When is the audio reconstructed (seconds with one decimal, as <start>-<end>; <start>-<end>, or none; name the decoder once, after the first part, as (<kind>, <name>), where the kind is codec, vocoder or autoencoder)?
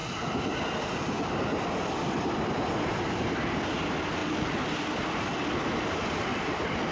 0.0-3.7 (vocoder, BigVGAN v2); 6.3-6.9